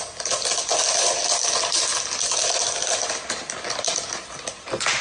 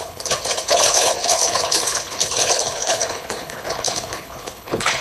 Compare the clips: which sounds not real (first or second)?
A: second